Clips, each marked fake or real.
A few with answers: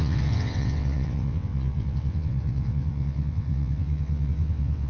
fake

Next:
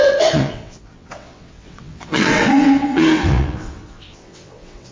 fake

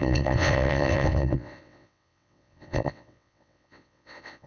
fake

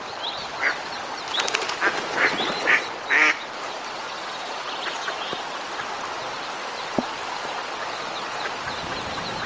real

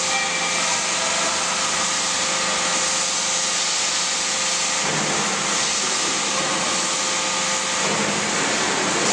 real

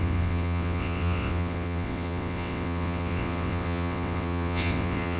fake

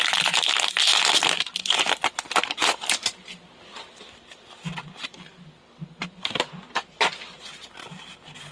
real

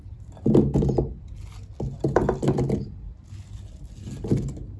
real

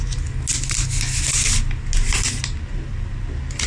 real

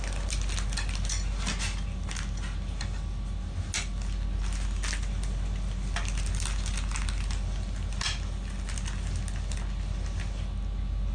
real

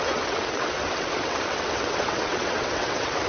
fake